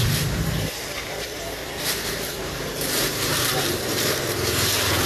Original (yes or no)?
no